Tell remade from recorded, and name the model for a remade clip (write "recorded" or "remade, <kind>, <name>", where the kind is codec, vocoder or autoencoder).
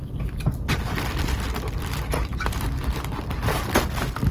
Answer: recorded